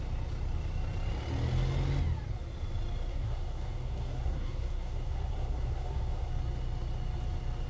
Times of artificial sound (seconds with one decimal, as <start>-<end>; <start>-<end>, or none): 3.1-6.3